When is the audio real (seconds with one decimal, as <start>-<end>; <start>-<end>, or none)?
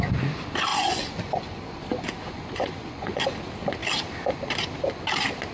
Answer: 0.0-0.7; 3.2-5.5